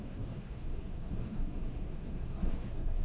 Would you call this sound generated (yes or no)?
yes